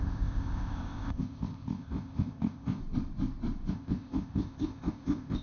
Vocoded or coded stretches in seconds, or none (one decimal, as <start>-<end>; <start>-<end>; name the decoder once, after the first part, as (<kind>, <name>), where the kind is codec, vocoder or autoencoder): 0.0-2.8 (codec, ZipCodec); 3.7-5.4